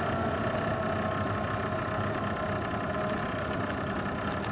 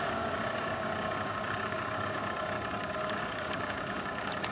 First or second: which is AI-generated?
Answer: second